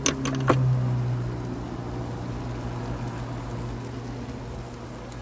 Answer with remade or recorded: recorded